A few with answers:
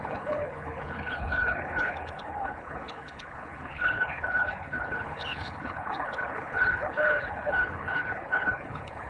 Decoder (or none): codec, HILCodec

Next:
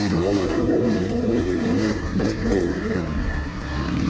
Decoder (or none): codec, SNAC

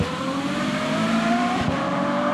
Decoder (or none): vocoder, BigVGAN v2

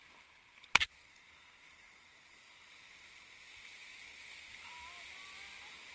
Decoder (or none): none